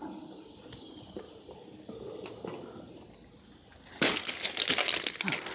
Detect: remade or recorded recorded